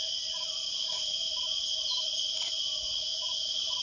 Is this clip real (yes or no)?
yes